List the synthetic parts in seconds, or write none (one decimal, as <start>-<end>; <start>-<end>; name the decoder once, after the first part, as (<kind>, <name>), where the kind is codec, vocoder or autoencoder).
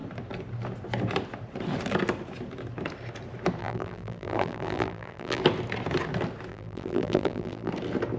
3.6-5.4 (vocoder, BigVGAN v2); 6.5-7.7